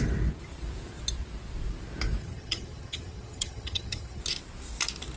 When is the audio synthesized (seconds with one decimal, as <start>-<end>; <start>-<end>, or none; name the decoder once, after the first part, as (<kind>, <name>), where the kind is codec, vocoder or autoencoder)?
2.2-4.2 (vocoder, HiFi-GAN)